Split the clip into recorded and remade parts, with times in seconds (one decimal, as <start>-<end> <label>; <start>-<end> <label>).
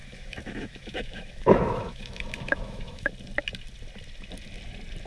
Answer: 0.0-3.1 remade; 3.1-5.1 recorded